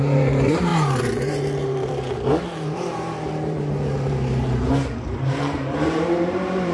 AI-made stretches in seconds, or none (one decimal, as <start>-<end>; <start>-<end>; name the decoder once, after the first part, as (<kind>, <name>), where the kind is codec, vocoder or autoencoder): 0.0-6.7 (vocoder, BigVGAN v2)